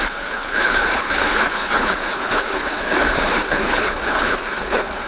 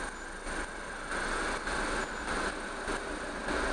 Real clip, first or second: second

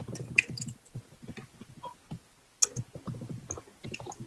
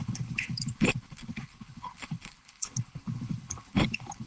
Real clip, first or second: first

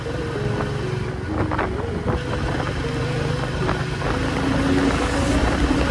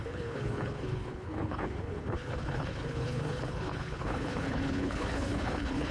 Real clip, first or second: first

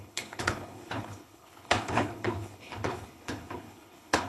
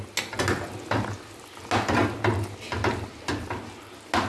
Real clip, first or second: second